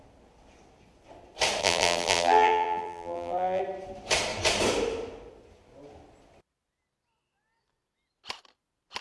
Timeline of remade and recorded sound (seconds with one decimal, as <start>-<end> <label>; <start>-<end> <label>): 0.0-1.6 recorded; 1.6-3.6 remade; 3.6-9.0 recorded